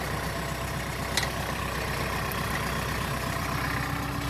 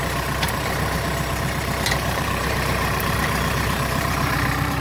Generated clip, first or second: second